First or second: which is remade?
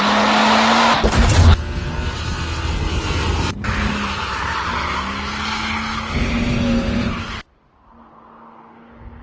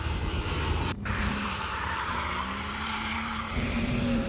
second